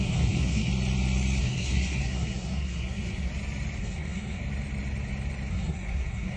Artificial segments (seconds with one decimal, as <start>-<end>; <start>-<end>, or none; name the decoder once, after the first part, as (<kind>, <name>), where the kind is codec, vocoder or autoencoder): 0.0-0.7 (codec, SNAC); 1.4-3.3; 3.8-4.4; 5.5-6.4